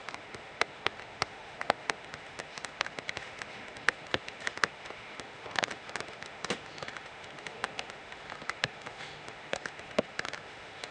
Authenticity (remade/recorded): remade